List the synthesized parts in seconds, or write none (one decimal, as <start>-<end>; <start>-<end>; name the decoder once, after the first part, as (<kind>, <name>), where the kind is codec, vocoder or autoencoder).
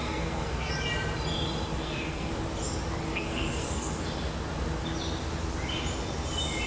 0.0-0.7 (codec, SNAC); 1.8-2.3; 3.1-4.0